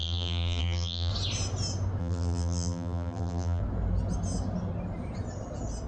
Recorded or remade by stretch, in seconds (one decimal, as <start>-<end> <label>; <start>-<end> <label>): 0.0-1.1 remade; 1.1-2.0 recorded; 2.0-3.6 remade; 3.6-5.9 recorded